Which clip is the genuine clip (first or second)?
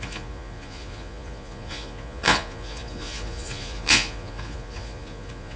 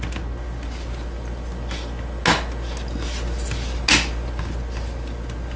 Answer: second